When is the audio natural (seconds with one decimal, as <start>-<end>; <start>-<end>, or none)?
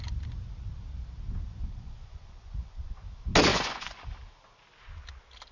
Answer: 0.0-1.6; 2.8-3.5; 4.0-5.5